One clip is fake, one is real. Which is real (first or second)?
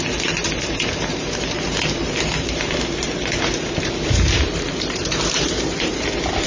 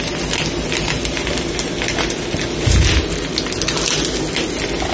second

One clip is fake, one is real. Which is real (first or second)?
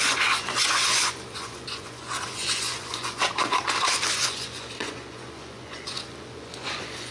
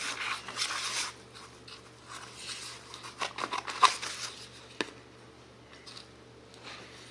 second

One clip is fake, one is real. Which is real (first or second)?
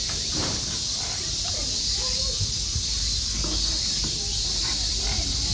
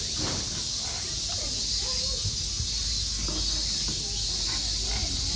second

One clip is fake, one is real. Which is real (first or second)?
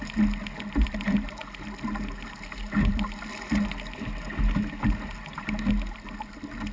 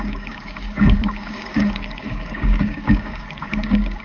first